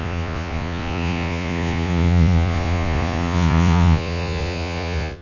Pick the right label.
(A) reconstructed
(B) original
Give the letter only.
A